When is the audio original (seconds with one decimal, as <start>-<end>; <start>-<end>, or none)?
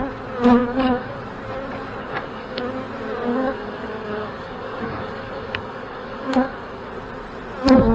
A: 0.0-0.6; 1.2-2.0; 2.6-3.3; 6.9-7.9